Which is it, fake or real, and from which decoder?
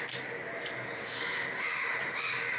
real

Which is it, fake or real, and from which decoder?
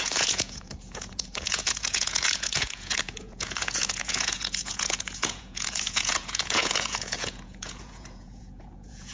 fake, vocoder, Vocos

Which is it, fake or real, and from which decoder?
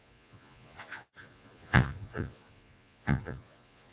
fake, vocoder, Vocos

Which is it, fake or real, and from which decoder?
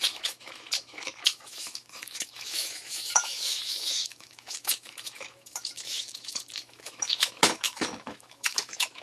fake, autoencoder, DAC-VAE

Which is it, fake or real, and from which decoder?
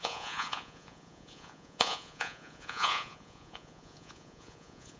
fake, vocoder, Vocos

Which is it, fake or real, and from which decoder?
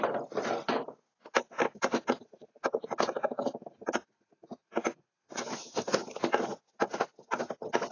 real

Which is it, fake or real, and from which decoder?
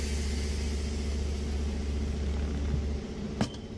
real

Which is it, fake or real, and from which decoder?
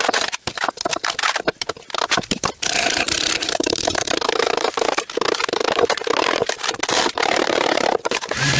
fake, vocoder, BigVGAN v2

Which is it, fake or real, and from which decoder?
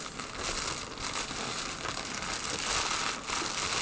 real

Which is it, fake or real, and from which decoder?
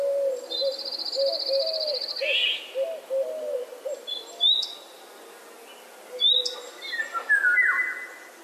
real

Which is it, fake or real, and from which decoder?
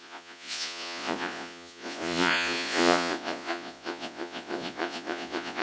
fake, vocoder, Vocos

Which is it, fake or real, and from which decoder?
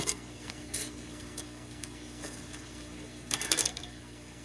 fake, codec, SNAC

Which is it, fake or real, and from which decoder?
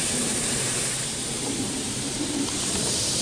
fake, vocoder, BigVGAN v2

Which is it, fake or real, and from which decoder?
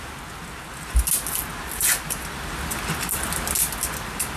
real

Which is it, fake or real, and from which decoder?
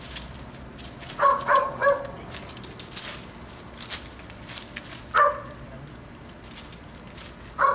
real